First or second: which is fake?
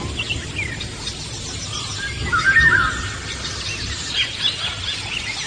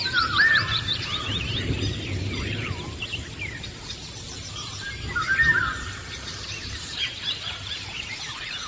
second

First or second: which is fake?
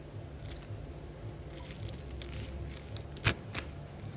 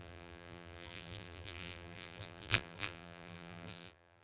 second